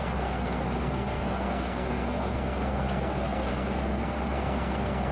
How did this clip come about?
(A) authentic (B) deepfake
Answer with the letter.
B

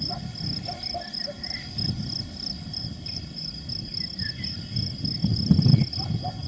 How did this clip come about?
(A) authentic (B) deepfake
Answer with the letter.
A